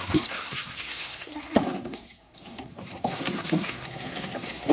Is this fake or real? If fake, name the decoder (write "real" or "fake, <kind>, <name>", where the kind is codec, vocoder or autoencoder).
fake, codec, SNAC